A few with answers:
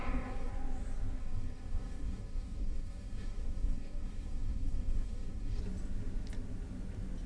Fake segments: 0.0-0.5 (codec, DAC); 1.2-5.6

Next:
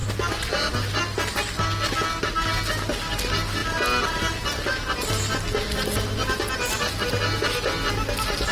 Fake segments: none